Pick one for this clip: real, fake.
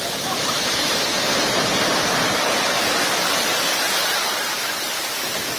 real